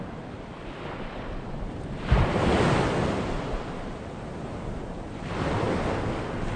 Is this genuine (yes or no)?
yes